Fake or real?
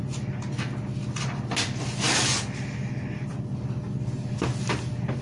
real